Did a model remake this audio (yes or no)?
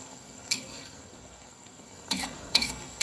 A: yes